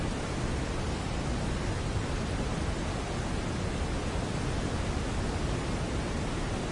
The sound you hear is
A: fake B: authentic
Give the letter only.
B